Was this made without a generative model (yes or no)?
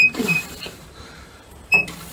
no